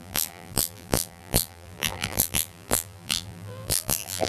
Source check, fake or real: fake